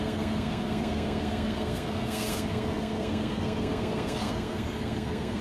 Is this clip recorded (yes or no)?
no